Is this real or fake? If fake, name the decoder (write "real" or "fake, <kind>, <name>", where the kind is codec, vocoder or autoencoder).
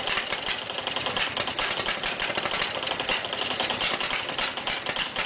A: real